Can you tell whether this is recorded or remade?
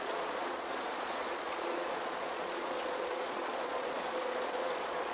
remade